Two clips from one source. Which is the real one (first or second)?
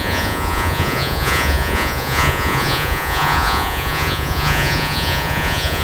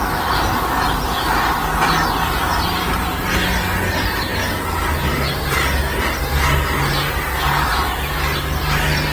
second